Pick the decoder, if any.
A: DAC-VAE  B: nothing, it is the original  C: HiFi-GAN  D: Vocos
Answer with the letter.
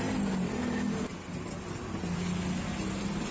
B